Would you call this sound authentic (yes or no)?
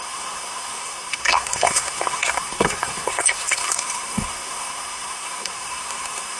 no